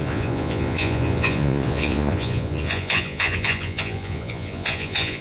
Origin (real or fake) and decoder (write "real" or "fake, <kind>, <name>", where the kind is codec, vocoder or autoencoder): fake, vocoder, Vocos